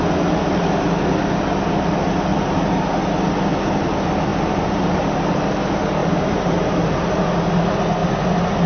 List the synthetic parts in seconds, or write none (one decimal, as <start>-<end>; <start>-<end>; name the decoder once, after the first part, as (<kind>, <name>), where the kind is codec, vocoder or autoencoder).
2.3-3.1 (vocoder, BigVGAN v2); 4.3-5.4; 6.0-7.2